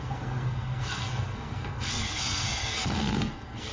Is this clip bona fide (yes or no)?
no